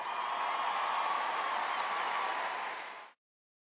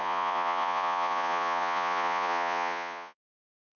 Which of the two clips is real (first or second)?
first